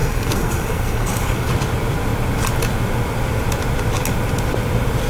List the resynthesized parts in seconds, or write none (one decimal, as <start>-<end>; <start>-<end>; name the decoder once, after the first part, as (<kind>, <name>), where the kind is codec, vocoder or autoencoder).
0.0-1.5 (codec, SNAC)